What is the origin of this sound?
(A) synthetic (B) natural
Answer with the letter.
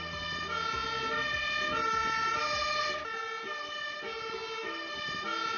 B